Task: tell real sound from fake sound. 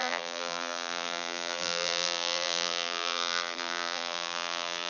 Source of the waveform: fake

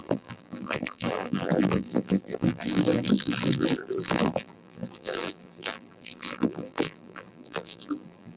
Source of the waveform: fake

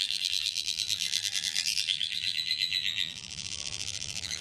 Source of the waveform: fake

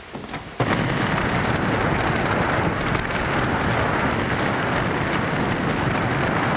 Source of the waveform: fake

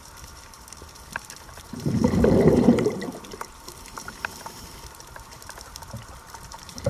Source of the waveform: fake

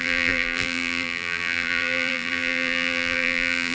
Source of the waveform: fake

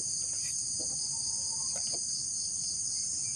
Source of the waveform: fake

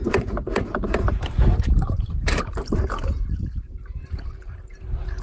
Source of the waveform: fake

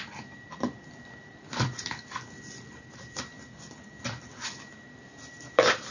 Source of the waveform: fake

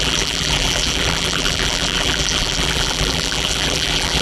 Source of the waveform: fake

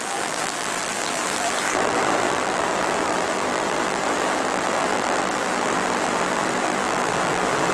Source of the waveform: fake